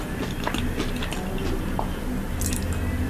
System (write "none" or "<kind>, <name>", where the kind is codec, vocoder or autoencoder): none